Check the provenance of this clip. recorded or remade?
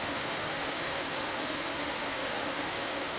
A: remade